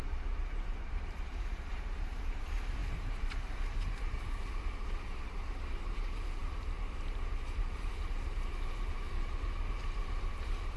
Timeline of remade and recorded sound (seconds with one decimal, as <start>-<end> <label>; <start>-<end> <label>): 0.0-10.8 remade